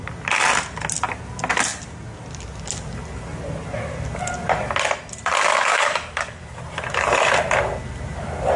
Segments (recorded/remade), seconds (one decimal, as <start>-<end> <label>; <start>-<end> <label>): 0.0-5.5 recorded; 5.5-6.6 remade; 6.6-8.6 recorded